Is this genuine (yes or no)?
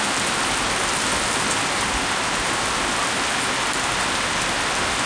yes